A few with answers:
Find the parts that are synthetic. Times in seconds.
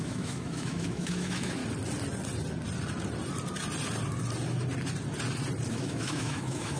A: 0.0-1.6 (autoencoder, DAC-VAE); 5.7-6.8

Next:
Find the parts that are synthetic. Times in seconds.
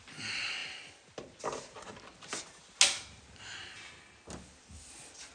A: none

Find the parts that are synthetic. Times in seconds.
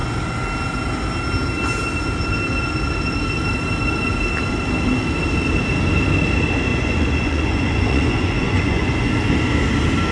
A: 6.7-9.1 (vocoder, Vocos)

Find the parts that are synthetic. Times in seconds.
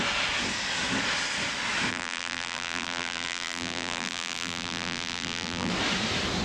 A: 1.9-5.7 (vocoder, BigVGAN v2)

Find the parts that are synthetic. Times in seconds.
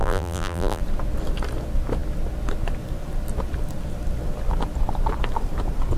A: 0.0-0.8 (vocoder, BigVGAN v2)